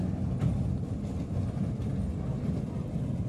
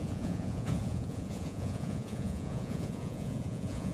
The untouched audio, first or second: first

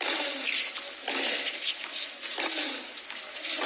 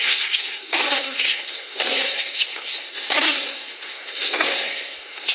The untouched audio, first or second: first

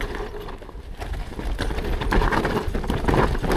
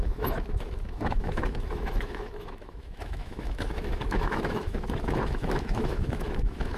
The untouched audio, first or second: first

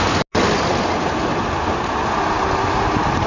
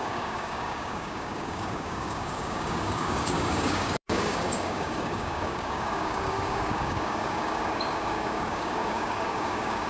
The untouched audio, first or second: first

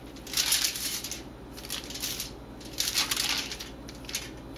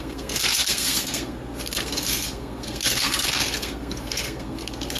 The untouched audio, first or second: first